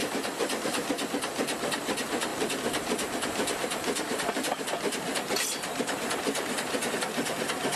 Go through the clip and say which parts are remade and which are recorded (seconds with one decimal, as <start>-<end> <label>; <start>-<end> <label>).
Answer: 0.0-0.9 remade; 0.9-2.3 recorded; 2.3-6.9 remade; 6.9-7.8 recorded